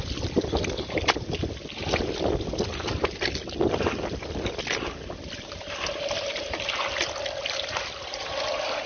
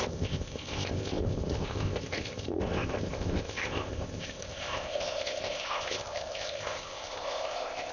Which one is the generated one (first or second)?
second